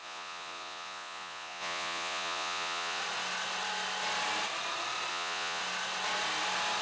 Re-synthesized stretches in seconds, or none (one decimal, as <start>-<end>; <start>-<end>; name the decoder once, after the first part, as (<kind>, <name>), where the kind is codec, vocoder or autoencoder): 0.0-3.0 (vocoder, Vocos); 5.1-5.6